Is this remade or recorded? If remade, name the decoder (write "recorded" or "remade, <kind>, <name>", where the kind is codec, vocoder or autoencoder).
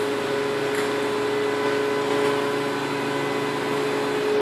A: recorded